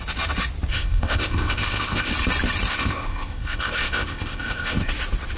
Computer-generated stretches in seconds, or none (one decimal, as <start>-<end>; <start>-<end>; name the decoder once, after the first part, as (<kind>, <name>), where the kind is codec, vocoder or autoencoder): 0.7-2.1 (codec, ZipCodec); 2.7-4.9

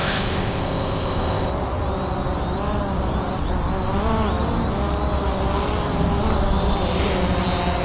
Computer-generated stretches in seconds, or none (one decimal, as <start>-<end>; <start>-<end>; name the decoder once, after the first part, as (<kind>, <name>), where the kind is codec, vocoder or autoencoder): 0.0-1.5 (codec, ZipCodec)